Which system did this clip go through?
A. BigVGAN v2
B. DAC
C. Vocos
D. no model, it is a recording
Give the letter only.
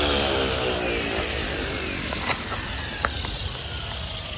D